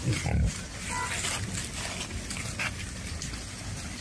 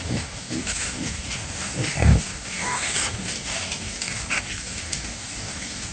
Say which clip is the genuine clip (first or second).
first